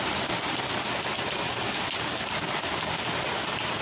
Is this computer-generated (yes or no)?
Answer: no